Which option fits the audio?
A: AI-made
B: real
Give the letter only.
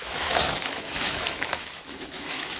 A